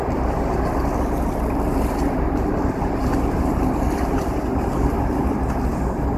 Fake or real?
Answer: real